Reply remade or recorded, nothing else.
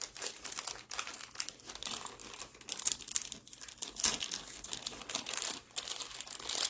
recorded